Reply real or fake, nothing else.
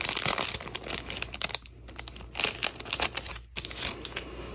real